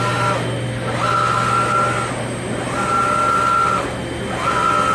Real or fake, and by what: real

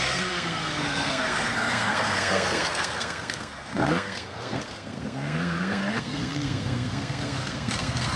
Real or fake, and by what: fake, codec, SNAC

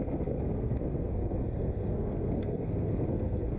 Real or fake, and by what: fake, codec, SNAC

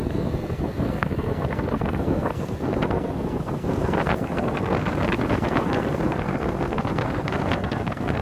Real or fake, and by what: fake, codec, SNAC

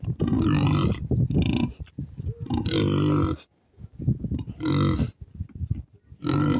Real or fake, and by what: real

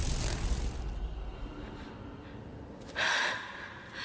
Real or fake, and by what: real